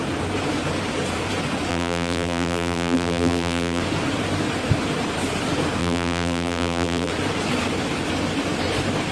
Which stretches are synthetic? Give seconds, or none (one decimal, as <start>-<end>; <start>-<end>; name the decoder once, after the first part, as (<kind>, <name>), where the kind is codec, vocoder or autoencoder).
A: 1.7-3.8 (vocoder, BigVGAN v2); 5.8-7.1

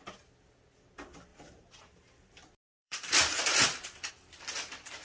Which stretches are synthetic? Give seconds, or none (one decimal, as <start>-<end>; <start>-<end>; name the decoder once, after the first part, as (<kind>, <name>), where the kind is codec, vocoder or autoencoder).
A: 1.3-4.1 (vocoder, BigVGAN v2)

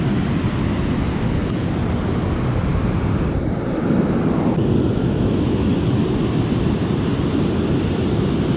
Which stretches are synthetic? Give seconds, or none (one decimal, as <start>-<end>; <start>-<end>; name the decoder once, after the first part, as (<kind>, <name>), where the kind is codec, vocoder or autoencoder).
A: 5.0-5.7 (autoencoder, DAC-VAE)